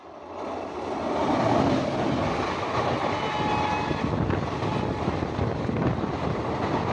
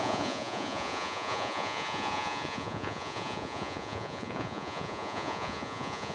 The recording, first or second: first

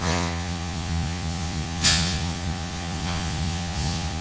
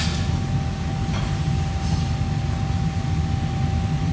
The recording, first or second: second